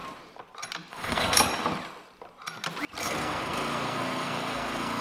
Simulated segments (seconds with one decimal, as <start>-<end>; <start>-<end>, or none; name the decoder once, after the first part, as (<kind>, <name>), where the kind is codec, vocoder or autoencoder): 0.9-1.5 (codec, SNAC); 3.0-5.0